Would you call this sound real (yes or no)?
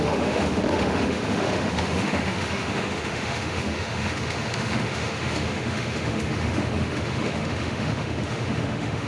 no